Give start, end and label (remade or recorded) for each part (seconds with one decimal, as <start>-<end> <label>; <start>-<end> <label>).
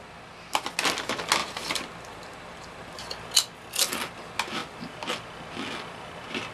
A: 0.0-1.4 recorded; 1.4-3.0 remade; 3.0-6.5 recorded